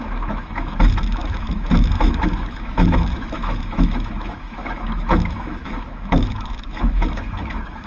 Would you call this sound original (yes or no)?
no